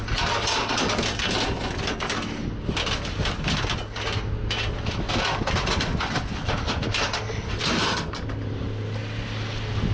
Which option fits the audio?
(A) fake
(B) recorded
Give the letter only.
B